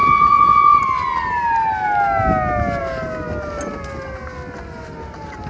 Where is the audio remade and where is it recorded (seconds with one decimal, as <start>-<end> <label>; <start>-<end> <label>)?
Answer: 0.0-5.5 recorded